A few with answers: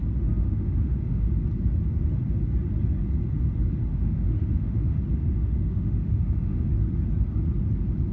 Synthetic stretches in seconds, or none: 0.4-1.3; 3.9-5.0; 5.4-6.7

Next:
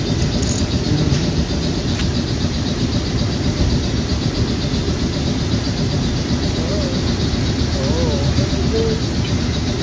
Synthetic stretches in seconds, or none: none